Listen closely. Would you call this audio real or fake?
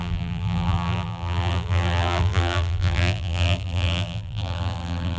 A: fake